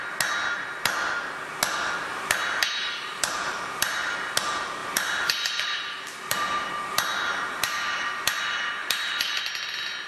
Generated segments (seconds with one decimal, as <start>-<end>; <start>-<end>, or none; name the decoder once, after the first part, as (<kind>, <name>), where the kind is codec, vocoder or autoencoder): 2.1-4.1 (vocoder, BigVGAN v2); 4.8-8.4; 8.8-9.4